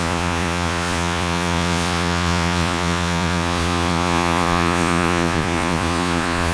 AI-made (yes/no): yes